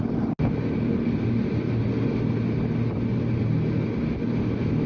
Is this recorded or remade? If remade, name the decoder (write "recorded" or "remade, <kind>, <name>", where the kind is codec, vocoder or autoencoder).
recorded